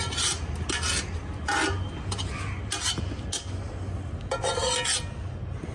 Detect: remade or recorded recorded